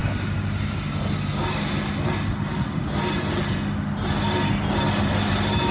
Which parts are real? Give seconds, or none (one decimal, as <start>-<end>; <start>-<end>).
0.0-5.7